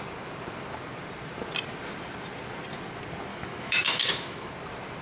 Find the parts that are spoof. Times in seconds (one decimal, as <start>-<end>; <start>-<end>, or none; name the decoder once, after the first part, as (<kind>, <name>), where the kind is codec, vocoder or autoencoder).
3.3-4.5 (autoencoder, DAC-VAE)